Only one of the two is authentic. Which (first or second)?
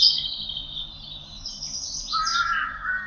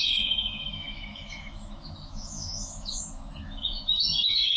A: first